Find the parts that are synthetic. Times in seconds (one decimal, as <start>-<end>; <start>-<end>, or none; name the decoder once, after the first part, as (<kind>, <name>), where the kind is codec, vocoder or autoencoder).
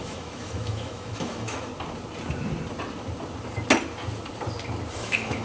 0.0-1.7 (autoencoder, DAC-VAE); 4.9-5.4